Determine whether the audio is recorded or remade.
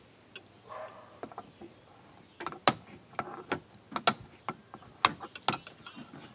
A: recorded